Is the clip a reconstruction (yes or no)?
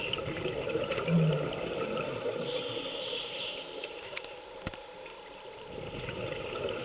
no